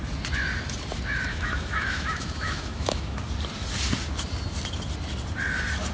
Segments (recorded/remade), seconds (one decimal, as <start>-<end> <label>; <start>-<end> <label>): 0.0-1.3 recorded; 1.3-3.2 remade; 3.2-5.9 recorded